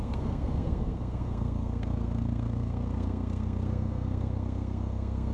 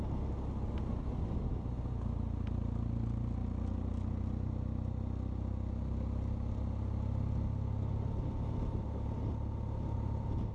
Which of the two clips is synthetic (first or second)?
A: first